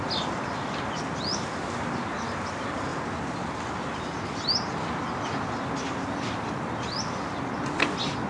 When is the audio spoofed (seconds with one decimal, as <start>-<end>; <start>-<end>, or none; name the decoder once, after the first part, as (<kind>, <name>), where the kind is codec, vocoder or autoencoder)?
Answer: none